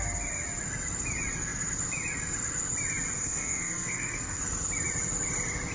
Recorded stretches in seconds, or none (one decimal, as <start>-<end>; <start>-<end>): 0.0-3.2; 4.4-5.7